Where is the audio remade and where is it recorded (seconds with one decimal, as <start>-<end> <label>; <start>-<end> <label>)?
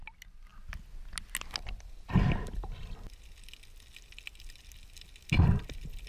0.0-6.1 recorded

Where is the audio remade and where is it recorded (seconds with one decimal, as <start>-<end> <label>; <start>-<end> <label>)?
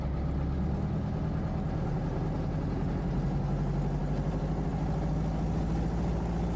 0.0-6.6 recorded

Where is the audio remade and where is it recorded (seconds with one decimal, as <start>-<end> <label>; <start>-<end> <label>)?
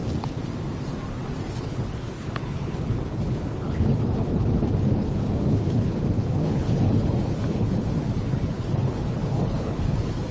0.0-1.5 recorded; 1.5-10.3 remade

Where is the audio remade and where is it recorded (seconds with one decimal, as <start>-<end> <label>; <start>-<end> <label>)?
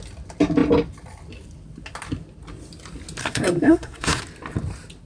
0.0-3.2 recorded; 3.2-4.2 remade; 4.2-5.1 recorded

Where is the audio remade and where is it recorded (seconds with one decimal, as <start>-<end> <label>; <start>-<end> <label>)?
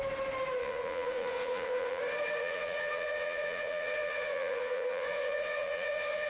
0.0-0.6 recorded; 0.6-2.0 remade; 2.0-2.4 recorded; 2.4-6.3 remade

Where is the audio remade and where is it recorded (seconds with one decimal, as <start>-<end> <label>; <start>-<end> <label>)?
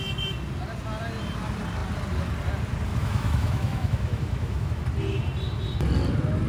0.0-2.9 recorded; 2.9-4.8 remade; 4.8-6.5 recorded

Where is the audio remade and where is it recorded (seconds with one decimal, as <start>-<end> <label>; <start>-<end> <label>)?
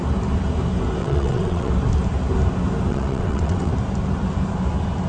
0.0-1.0 recorded; 1.0-1.7 remade; 1.7-2.9 recorded; 2.9-3.7 remade; 3.7-5.1 recorded